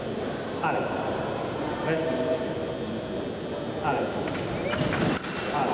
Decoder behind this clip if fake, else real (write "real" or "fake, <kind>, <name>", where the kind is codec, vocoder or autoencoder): real